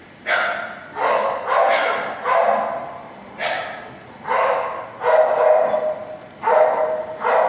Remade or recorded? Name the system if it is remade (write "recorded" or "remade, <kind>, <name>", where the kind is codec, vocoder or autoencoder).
recorded